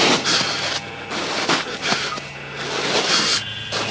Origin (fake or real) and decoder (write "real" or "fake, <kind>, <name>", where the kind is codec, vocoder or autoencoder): real